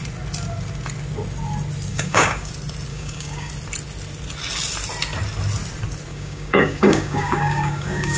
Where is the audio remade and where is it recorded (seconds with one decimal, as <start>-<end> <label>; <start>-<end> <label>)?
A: 0.0-1.9 recorded; 1.9-2.5 remade; 2.5-2.9 recorded; 2.9-3.5 remade; 3.5-6.1 recorded; 6.1-8.2 remade